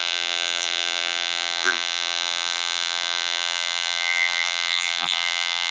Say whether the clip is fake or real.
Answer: fake